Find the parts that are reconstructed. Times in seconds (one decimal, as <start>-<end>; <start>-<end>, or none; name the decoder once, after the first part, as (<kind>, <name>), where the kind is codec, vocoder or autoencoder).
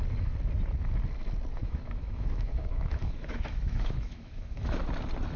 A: 1.6-4.8 (autoencoder, DAC-VAE)